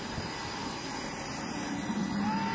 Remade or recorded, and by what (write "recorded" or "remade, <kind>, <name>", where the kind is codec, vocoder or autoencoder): recorded